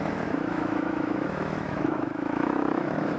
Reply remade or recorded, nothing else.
remade